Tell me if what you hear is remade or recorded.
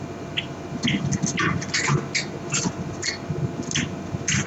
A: recorded